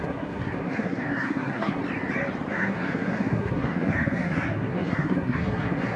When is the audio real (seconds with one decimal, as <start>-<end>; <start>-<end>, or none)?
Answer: 1.8-2.5